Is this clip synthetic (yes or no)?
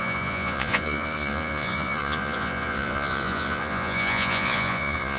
yes